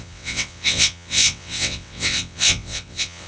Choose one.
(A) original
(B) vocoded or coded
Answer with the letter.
B